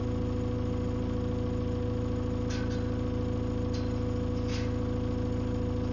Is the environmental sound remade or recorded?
recorded